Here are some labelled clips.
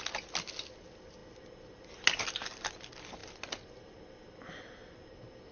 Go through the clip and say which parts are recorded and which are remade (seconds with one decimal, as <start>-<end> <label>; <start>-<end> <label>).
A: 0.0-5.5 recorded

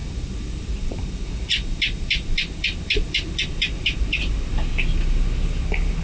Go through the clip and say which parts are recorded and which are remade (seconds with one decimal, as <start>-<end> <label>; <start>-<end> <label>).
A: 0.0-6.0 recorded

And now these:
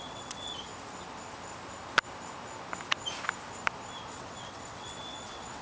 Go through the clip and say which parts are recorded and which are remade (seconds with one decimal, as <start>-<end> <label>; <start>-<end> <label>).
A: 0.0-0.7 remade; 0.7-4.1 recorded; 4.1-5.6 remade

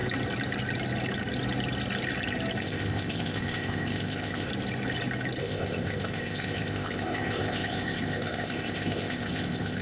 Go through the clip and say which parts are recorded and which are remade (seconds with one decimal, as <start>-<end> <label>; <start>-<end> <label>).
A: 0.0-2.6 recorded; 2.6-4.5 remade; 4.5-5.4 recorded; 5.4-9.8 remade